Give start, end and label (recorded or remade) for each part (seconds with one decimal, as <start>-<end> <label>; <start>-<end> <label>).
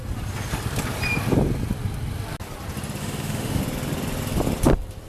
0.0-3.0 recorded; 3.0-3.6 remade; 3.6-5.1 recorded